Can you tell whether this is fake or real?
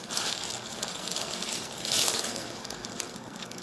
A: fake